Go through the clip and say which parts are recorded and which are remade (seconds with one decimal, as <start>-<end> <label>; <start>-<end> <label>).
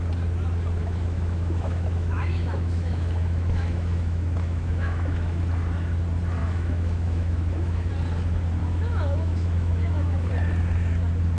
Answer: 0.0-0.8 recorded; 0.8-5.4 remade; 5.4-6.4 recorded; 6.4-7.9 remade; 7.9-8.6 recorded; 8.6-10.3 remade; 10.3-11.4 recorded